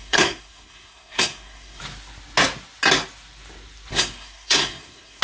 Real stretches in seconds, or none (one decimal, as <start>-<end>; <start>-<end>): 1.8-3.9